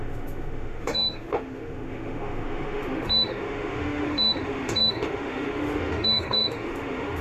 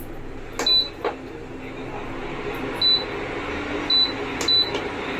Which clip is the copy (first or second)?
first